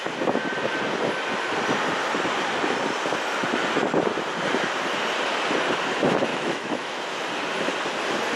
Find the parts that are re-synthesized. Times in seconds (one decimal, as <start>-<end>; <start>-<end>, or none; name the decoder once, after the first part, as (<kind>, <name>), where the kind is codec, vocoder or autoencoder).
6.3-7.0 (autoencoder, DAC-VAE)